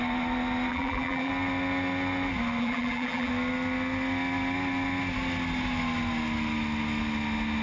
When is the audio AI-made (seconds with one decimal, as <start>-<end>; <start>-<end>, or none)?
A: 0.7-1.3; 2.6-3.3